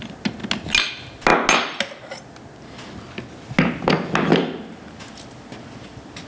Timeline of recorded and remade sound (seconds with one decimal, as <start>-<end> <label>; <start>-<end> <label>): 0.0-6.3 recorded